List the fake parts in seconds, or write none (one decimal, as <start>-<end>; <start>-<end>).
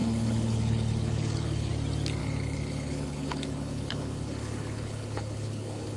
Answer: 0.0-1.7; 2.2-6.0